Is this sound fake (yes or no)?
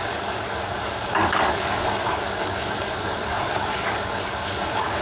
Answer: yes